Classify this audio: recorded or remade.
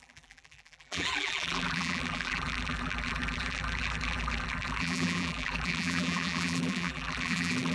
remade